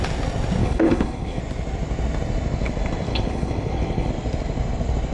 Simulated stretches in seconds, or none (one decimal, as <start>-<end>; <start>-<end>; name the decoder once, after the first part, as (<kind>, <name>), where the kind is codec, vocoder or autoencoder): 0.6-1.4 (codec, HILCodec); 3.1-4.1